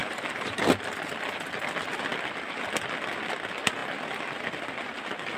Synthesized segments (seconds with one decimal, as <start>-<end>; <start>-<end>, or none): 0.0-0.6